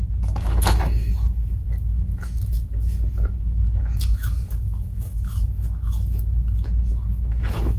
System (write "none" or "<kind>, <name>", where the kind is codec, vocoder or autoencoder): autoencoder, DAC-VAE